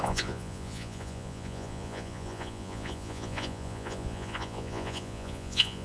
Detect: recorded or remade remade